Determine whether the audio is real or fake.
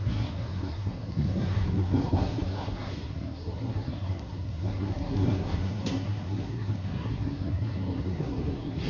fake